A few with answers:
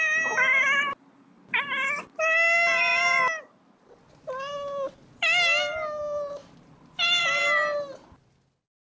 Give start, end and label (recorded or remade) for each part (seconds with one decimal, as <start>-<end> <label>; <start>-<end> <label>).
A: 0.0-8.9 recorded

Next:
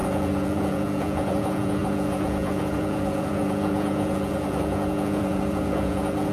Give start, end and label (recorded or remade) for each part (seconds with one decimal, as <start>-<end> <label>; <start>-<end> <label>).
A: 0.0-6.3 remade

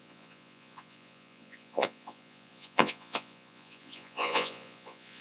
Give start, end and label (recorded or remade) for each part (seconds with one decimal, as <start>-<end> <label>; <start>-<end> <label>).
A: 0.0-5.2 remade